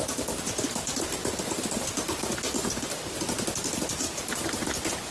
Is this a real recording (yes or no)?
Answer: yes